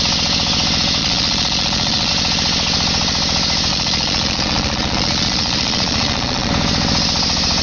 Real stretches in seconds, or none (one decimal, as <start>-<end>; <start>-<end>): 0.0-1.0; 2.1-3.7; 6.5-7.6